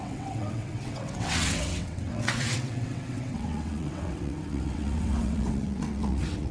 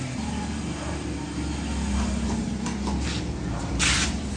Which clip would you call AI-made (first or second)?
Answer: first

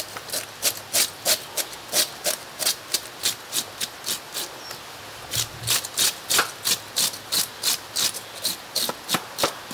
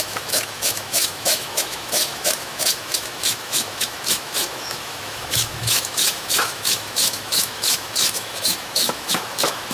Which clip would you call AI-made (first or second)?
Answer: second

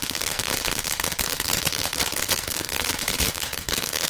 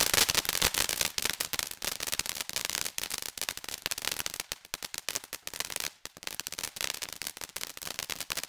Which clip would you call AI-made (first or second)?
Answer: first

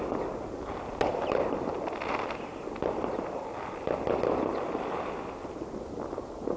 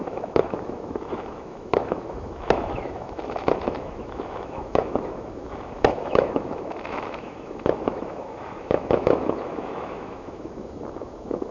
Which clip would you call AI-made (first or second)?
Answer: second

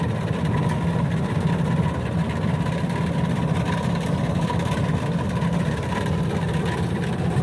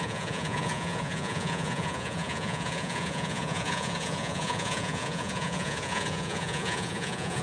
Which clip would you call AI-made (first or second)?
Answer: second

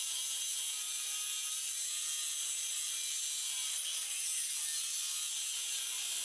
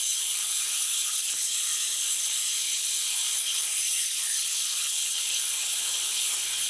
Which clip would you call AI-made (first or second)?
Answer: second